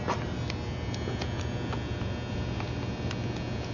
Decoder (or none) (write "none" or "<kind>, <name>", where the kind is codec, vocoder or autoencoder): none